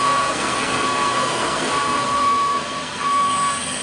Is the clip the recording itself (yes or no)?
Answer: no